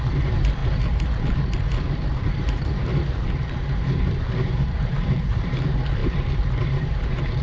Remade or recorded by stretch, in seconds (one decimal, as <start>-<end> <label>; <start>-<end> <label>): 0.0-0.6 remade; 0.6-2.1 recorded; 2.1-7.4 remade